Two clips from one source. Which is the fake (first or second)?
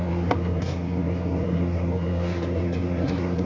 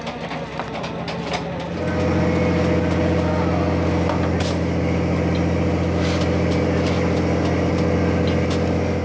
first